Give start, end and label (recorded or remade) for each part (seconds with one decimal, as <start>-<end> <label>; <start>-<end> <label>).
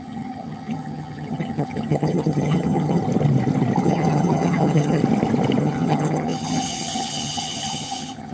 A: 0.0-3.0 remade; 3.0-3.8 recorded; 3.8-5.0 remade; 5.0-5.6 recorded; 5.6-8.3 remade